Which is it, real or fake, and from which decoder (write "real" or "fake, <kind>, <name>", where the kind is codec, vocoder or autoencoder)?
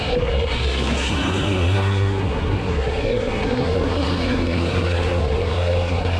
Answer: fake, codec, SNAC